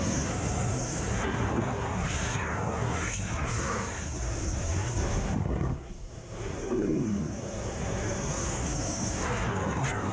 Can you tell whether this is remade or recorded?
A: remade